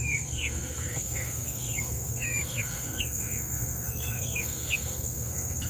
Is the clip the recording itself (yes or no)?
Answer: no